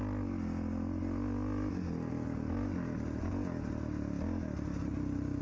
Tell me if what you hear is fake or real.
real